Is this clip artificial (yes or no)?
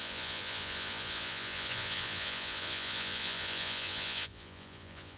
yes